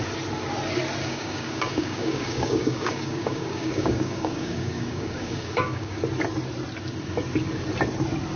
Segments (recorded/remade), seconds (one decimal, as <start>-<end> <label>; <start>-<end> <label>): 0.0-1.0 recorded; 1.0-6.0 remade; 6.0-8.4 recorded